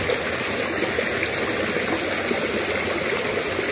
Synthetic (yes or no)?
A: no